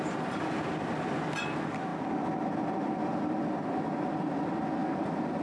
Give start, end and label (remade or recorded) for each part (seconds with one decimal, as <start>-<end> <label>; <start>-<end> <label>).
0.0-5.4 recorded